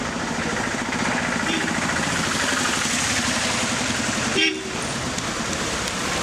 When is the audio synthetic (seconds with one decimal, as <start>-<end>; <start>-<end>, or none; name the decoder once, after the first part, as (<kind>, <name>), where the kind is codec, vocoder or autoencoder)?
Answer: 0.0-2.1 (vocoder, BigVGAN v2)